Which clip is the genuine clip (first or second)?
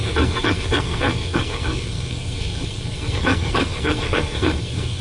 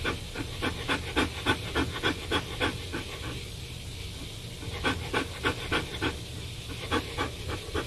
second